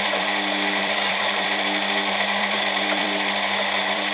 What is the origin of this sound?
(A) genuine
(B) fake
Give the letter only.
B